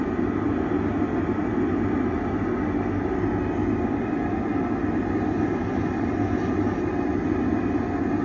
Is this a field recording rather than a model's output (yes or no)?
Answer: yes